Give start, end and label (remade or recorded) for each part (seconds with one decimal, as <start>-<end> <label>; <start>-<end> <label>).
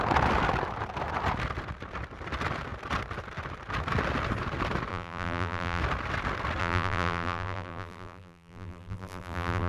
0.0-4.9 recorded; 4.9-5.8 remade; 5.8-6.6 recorded; 6.6-9.7 remade